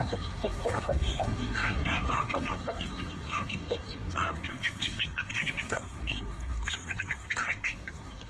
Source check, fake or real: fake